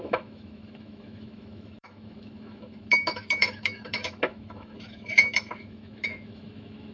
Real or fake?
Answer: fake